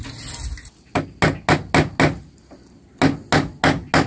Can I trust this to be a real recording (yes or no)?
yes